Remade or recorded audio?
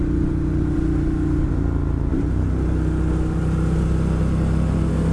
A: recorded